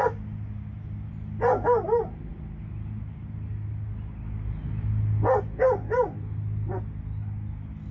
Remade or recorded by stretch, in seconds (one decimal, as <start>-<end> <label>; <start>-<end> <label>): 0.0-7.9 recorded